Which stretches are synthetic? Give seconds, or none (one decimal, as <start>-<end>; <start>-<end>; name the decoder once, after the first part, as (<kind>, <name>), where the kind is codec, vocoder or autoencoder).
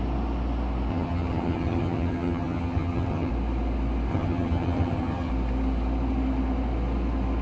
0.9-3.3 (vocoder, HiFi-GAN); 4.1-5.3